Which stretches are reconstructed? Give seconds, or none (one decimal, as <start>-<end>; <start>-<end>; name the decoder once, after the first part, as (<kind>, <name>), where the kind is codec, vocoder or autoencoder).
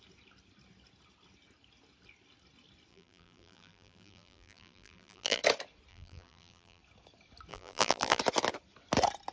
2.9-5.4 (vocoder, BigVGAN v2); 5.9-6.8; 7.5-8.2